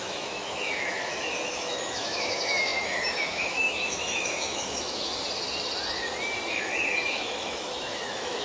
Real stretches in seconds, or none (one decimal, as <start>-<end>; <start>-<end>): 5.1-6.6